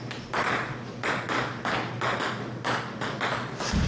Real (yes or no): yes